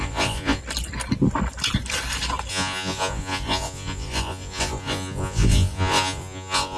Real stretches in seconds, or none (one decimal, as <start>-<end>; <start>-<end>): 0.6-2.5